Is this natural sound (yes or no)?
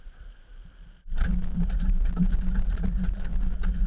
no